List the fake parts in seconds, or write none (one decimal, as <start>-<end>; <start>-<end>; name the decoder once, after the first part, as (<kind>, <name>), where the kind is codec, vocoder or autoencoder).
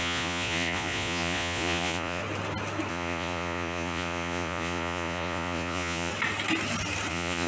0.0-2.2 (vocoder, Vocos); 2.9-6.1; 7.1-7.5